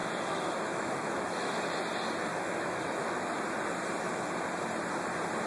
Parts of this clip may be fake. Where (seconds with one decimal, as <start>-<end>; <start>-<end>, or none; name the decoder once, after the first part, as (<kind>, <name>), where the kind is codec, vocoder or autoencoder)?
0.0-1.6 (autoencoder, DAC-VAE); 2.3-3.4

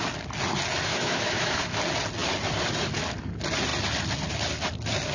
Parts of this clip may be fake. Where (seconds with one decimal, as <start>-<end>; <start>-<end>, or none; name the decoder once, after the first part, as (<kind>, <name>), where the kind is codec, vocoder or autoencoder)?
0.9-1.8 (autoencoder, DAC-VAE)

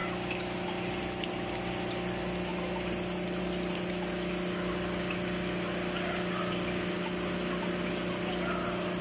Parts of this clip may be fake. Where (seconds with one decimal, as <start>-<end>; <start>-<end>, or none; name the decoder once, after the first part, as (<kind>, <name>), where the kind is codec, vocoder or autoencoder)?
none

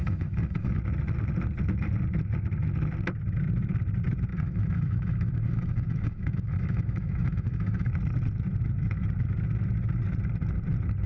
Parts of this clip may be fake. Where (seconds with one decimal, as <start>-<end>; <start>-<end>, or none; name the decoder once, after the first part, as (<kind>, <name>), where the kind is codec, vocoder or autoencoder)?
0.0-0.8 (autoencoder, DAC-VAE); 4.3-7.9

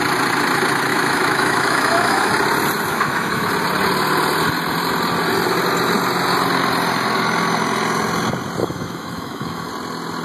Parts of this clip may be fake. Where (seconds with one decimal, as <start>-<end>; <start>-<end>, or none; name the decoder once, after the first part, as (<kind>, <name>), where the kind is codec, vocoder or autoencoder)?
0.9-2.3 (autoencoder, DAC-VAE); 2.9-3.5; 8.6-9.7

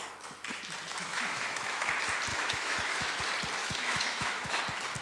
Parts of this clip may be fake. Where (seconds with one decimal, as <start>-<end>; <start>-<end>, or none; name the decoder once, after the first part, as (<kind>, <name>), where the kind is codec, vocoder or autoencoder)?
1.1-1.9 (autoencoder, DAC-VAE); 2.3-3.2; 3.6-4.6

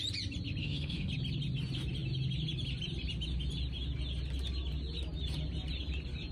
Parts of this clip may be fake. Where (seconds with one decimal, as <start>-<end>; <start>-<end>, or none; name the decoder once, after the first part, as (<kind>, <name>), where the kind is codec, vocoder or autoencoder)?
0.6-1.1 (autoencoder, DAC-VAE)

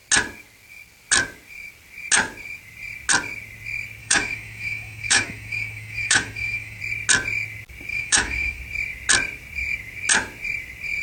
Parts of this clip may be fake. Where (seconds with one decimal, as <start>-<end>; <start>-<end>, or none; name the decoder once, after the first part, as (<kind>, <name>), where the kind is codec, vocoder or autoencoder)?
4.0-6.8 (autoencoder, DAC-VAE); 7.9-8.6